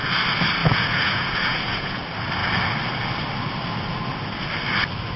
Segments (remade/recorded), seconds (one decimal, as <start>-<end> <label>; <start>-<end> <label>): 0.0-0.6 recorded; 0.6-2.0 remade; 2.0-5.2 recorded